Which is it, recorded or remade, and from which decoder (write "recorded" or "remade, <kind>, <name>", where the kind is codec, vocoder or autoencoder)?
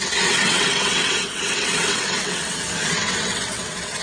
remade, vocoder, WaveNeXt